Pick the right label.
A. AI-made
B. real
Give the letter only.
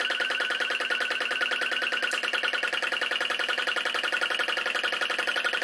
A